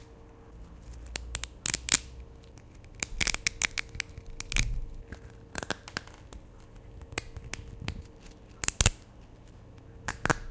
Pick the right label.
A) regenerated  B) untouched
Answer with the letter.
B